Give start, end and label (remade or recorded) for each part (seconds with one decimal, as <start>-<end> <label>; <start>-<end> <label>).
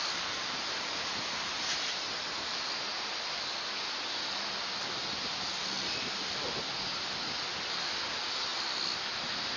0.0-9.6 recorded